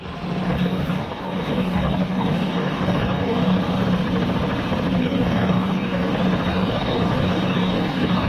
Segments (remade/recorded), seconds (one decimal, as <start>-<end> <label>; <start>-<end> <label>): 0.0-0.5 recorded; 0.5-3.6 remade; 3.6-5.0 recorded; 5.0-6.1 remade; 6.1-6.5 recorded; 6.5-8.3 remade